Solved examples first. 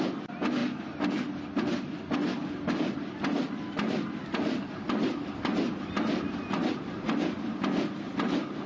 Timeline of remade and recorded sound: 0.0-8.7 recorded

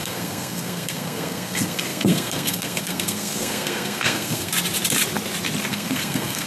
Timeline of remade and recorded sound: 0.0-4.5 remade; 4.5-5.7 recorded; 5.7-6.5 remade

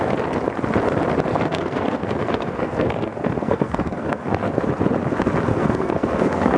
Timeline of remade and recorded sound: 0.0-1.3 recorded; 1.3-4.6 remade; 4.6-5.5 recorded; 5.5-6.6 remade

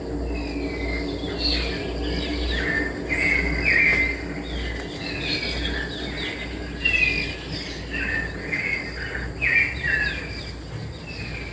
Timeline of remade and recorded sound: 0.0-11.5 recorded

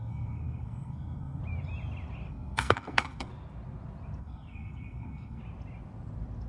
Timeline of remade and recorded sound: 0.0-1.4 remade; 1.4-2.3 recorded; 2.3-3.3 remade; 3.3-4.2 recorded; 4.2-5.4 remade; 5.4-6.5 recorded

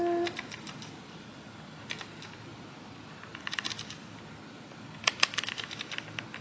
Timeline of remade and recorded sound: 0.0-6.4 recorded

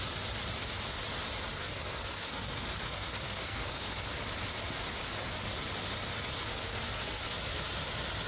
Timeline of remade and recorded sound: 0.0-1.6 recorded; 1.6-4.1 remade; 4.1-6.5 recorded; 6.5-7.6 remade; 7.6-8.3 recorded

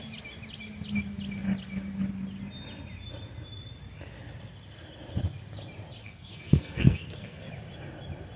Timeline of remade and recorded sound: 0.0-6.0 recorded; 6.0-7.5 remade; 7.5-8.4 recorded